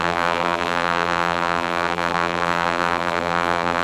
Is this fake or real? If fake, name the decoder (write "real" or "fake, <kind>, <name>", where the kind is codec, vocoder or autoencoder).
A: fake, vocoder, BigVGAN v2